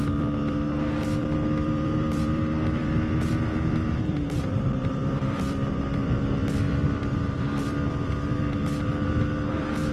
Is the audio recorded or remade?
remade